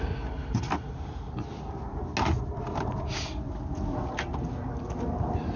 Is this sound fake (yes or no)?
no